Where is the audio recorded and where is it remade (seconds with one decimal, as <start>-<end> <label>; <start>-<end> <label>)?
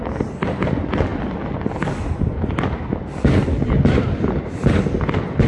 0.0-5.5 recorded